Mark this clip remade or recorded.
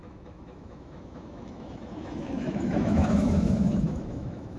remade